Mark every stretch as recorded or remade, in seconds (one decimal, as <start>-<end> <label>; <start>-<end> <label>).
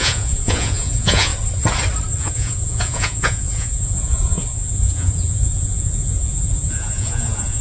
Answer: 0.0-1.3 remade; 1.3-2.2 recorded; 2.2-7.6 remade